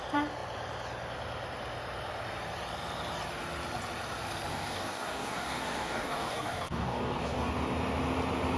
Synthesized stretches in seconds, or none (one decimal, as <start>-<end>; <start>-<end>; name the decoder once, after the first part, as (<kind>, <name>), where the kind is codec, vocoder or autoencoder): 4.5-7.5 (codec, DAC)